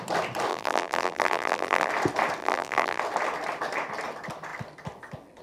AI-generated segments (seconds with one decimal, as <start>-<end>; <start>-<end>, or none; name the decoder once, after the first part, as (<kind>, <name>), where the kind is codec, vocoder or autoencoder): 0.5-1.9 (vocoder, BigVGAN v2); 2.4-3.0